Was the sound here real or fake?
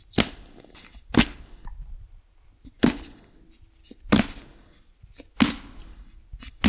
real